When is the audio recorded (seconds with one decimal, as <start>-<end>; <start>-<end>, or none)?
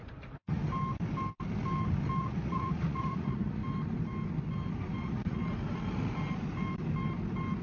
0.6-2.2; 3.6-5.0; 5.4-7.6